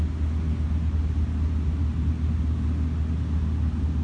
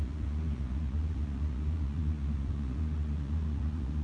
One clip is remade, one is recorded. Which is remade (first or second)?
second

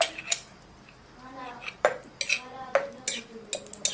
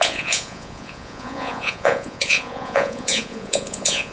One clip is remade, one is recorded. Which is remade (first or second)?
second